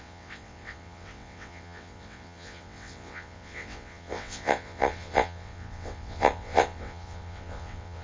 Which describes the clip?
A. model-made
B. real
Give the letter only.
A